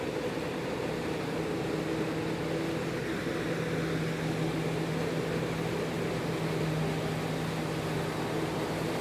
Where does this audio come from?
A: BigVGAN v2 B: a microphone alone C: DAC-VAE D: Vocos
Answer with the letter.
B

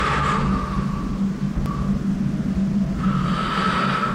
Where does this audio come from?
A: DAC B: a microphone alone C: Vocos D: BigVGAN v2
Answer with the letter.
B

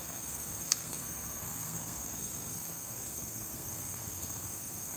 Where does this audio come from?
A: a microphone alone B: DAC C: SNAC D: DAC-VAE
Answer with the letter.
C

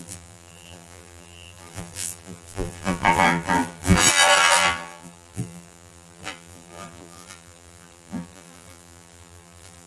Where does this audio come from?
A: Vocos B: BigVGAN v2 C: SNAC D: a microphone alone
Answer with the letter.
B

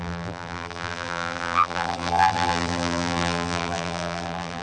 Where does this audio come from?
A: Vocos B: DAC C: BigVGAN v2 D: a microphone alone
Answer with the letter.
C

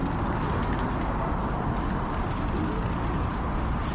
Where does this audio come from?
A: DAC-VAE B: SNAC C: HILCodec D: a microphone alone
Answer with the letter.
D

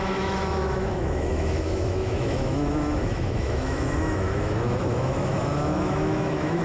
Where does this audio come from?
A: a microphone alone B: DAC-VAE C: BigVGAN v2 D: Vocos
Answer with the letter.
B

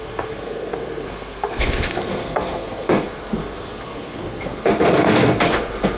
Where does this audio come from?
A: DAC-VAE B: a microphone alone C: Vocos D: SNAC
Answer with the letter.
D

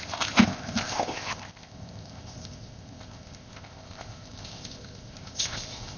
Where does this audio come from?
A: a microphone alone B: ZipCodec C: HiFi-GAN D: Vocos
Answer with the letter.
B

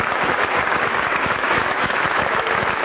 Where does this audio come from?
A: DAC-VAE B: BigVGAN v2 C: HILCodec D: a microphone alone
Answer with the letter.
A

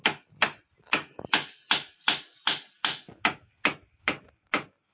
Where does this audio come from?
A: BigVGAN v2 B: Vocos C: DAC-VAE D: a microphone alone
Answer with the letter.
D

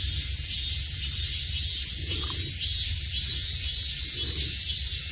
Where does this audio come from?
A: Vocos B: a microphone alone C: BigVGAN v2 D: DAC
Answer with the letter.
B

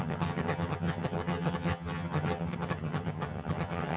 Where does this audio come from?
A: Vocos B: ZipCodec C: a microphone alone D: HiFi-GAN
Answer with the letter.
D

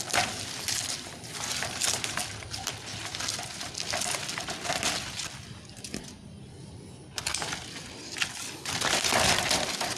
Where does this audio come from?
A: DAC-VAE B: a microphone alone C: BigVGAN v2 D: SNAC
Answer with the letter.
B